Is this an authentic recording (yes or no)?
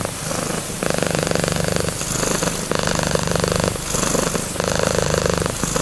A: yes